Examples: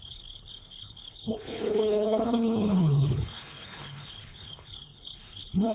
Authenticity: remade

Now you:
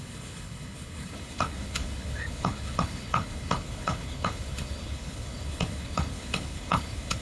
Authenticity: remade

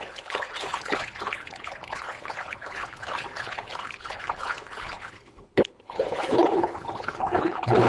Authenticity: remade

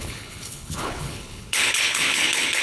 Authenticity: remade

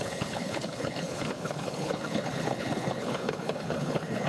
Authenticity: remade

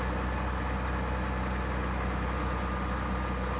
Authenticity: recorded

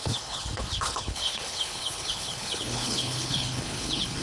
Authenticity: remade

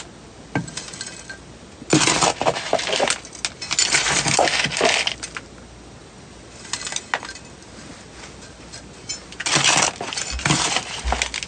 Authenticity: recorded